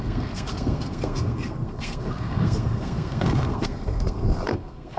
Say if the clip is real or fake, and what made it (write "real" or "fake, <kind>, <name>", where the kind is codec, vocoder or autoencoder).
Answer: fake, codec, SNAC